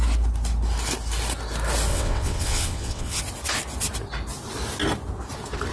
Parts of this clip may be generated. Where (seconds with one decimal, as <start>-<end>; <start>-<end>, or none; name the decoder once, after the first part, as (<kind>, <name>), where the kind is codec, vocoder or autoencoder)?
1.9-3.2 (vocoder, WaveNeXt)